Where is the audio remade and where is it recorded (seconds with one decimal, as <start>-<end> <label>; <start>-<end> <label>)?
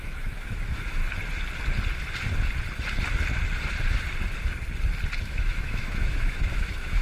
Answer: 0.0-1.0 remade; 1.0-5.2 recorded; 5.2-7.0 remade